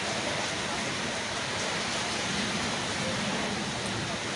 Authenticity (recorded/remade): recorded